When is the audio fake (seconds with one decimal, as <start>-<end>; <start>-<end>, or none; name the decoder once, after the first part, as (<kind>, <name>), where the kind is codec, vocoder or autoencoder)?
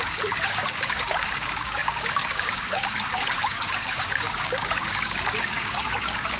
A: 0.0-6.4 (codec, DAC)